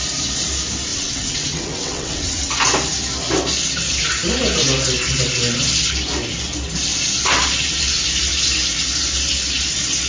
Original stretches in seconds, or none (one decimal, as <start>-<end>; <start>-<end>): 0.0-0.9; 2.5-10.1

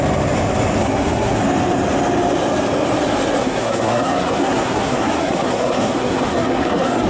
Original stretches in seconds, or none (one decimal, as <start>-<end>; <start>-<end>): 0.0-0.8; 1.4-3.4

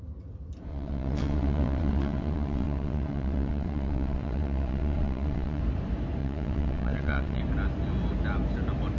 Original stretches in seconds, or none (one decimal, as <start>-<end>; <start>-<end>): 0.0-0.7; 5.6-6.2; 7.4-9.0

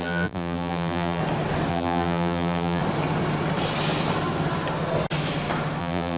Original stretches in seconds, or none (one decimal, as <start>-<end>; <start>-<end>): 1.2-1.7; 2.8-5.8

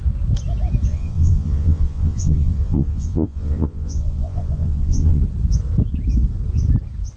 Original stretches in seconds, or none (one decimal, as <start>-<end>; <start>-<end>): 0.0-0.9; 5.2-7.2

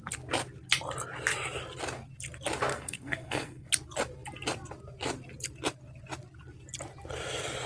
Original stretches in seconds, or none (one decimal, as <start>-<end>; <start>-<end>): 0.0-2.7; 3.7-7.7

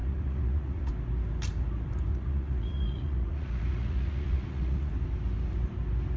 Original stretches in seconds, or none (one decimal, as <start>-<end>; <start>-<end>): 0.9-2.1; 4.9-6.2